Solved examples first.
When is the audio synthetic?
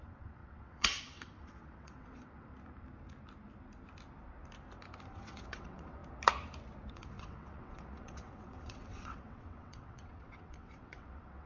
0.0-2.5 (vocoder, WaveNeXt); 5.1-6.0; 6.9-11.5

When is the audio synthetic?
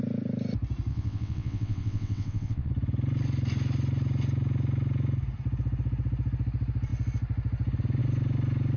0.9-2.7 (vocoder, WaveNeXt)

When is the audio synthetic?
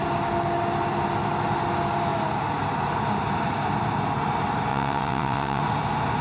4.7-5.6 (vocoder, WaveNeXt)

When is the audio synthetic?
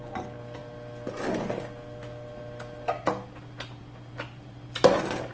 none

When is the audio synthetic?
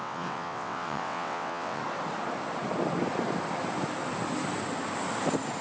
0.0-1.8 (vocoder, WaveNeXt)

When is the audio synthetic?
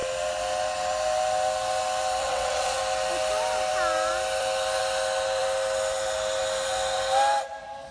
2.2-2.8 (vocoder, WaveNeXt)